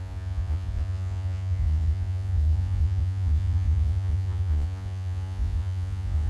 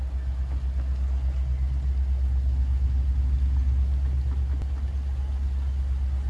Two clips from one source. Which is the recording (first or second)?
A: second